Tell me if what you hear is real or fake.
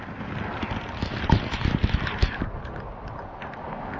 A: real